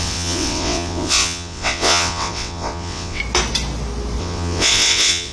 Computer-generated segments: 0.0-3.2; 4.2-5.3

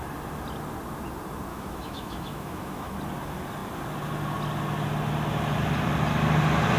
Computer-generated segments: 1.5-2.9

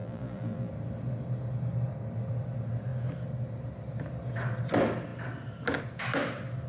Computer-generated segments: 0.0-0.7

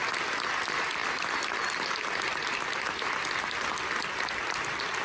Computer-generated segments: none

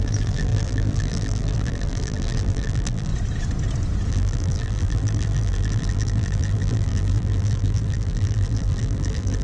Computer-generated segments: 0.0-3.1; 4.1-9.4

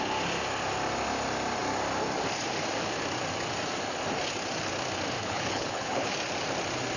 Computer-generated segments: 5.2-6.1

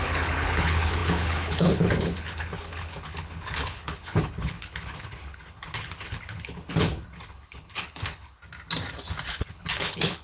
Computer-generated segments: 0.0-8.4; 9.3-10.2

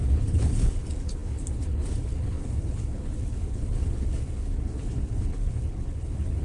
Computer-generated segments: 0.0-6.4